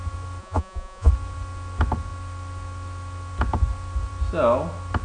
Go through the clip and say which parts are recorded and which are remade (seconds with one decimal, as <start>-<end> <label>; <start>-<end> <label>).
0.0-0.4 recorded; 0.4-1.1 remade; 1.1-5.0 recorded